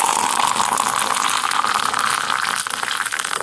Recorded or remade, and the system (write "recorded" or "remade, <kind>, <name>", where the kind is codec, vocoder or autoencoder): recorded